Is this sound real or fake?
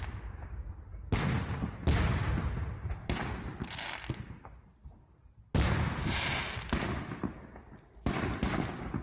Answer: real